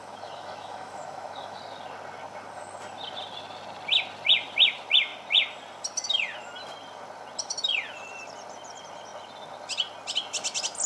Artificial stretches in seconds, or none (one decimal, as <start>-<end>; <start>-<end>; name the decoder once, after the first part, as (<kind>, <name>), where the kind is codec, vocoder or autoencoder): 0.0-1.6 (autoencoder, DAC-VAE)

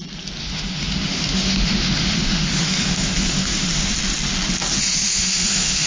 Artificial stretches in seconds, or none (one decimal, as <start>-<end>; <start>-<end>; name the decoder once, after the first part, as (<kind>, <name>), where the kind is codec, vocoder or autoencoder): 0.4-3.9 (autoencoder, DAC-VAE); 4.7-5.9

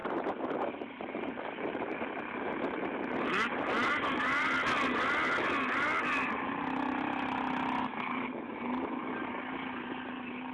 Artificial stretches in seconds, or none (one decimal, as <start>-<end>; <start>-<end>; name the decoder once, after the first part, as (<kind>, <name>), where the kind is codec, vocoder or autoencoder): 7.9-9.1 (autoencoder, DAC-VAE)

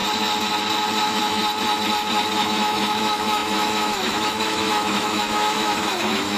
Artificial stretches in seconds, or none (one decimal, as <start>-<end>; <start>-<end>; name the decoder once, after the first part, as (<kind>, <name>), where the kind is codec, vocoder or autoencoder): 1.0-1.4 (autoencoder, DAC-VAE); 2.4-6.4

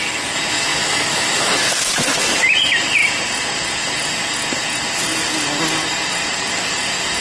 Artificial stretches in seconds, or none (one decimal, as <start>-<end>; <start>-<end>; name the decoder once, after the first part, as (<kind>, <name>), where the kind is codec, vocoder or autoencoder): 0.7-1.5 (autoencoder, DAC-VAE)